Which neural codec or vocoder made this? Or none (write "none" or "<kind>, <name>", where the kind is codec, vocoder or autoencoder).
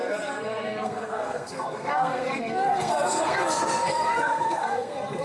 codec, SNAC